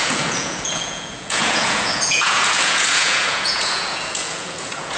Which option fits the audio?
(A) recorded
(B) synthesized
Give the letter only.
B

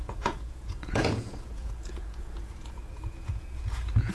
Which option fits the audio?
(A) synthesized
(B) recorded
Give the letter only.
A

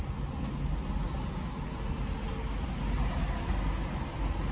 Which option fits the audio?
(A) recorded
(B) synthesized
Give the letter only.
A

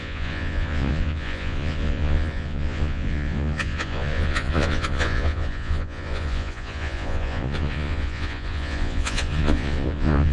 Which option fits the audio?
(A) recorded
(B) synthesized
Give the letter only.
B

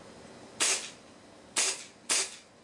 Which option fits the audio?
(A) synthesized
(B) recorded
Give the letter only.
B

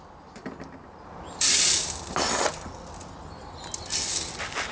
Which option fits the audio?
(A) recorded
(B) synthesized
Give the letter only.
A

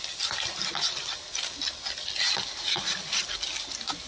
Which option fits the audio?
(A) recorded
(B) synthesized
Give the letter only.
A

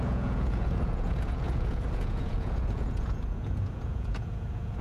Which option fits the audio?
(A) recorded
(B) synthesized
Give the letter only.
B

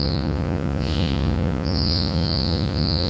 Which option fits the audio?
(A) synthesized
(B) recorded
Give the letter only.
A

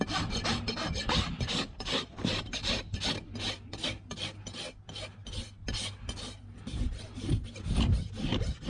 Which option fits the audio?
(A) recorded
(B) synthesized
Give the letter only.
A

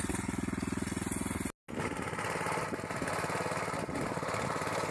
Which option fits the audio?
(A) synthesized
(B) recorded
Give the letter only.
B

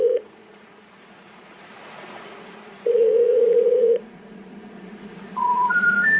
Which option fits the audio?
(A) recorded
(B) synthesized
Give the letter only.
B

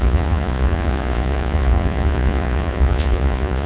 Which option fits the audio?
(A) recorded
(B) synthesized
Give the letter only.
B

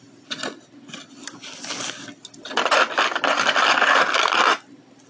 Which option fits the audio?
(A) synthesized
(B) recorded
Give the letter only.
B